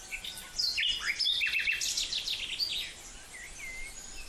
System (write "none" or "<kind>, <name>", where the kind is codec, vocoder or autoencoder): none